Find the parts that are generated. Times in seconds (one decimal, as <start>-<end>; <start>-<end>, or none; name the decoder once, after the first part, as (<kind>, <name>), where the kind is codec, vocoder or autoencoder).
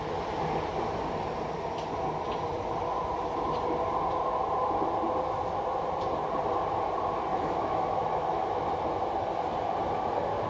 7.3-8.7 (autoencoder, DAC-VAE)